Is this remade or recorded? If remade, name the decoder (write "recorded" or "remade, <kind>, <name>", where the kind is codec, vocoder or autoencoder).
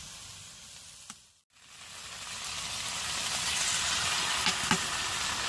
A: recorded